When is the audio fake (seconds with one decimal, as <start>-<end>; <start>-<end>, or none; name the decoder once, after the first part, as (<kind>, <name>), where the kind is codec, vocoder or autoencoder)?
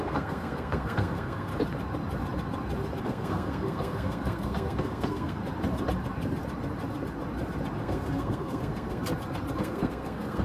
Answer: 0.0-1.5 (codec, SNAC); 3.0-5.4; 7.8-9.0; 9.6-10.4